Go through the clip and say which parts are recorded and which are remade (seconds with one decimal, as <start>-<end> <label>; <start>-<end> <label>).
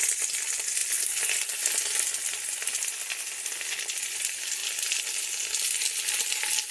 0.0-0.8 remade; 0.8-3.8 recorded; 3.8-4.6 remade; 4.6-6.7 recorded